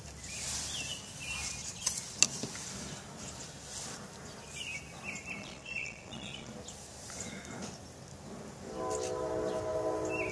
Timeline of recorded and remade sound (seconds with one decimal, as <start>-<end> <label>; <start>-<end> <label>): 0.0-5.4 recorded; 5.4-6.5 remade; 6.5-10.3 recorded